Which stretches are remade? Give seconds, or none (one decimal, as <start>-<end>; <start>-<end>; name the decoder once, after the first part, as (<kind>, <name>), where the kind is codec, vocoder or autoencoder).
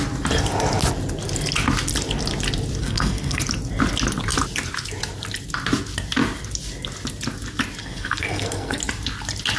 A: 2.8-3.4 (codec, SNAC); 7.8-8.8